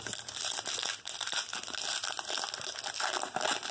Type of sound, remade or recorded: recorded